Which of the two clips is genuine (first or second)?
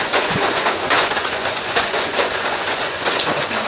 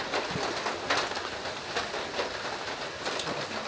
second